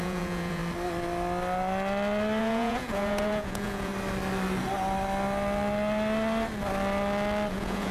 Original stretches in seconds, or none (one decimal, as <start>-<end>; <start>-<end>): 0.6-2.4; 3.9-7.5